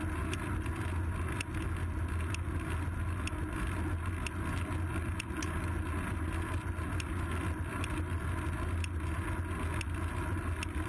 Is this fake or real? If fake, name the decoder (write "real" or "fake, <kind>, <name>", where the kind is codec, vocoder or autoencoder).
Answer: real